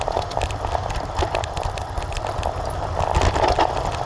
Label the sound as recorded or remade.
recorded